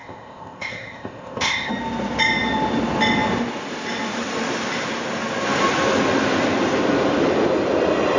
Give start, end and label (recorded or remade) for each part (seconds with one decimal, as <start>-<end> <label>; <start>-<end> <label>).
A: 0.0-1.7 remade; 1.7-8.2 recorded